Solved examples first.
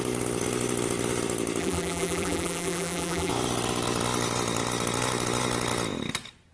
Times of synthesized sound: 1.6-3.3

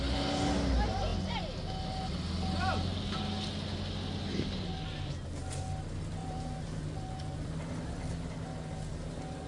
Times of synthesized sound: 6.2-7.6

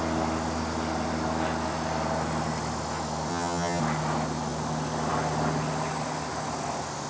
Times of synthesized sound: 3.3-3.8

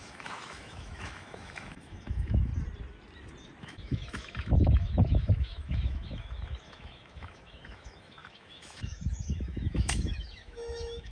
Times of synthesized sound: 0.0-2.5; 3.6-11.1

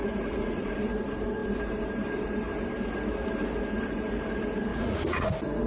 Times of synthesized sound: 0.0-0.7; 4.7-5.3

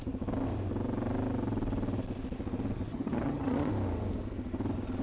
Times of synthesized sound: 2.9-3.7

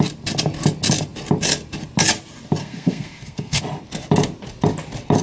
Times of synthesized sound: 2.6-3.6

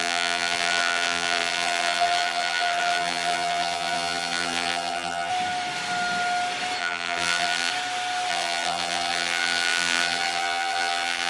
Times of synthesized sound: 0.0-5.3; 6.8-7.7; 8.3-11.3